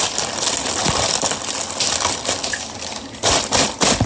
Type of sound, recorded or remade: recorded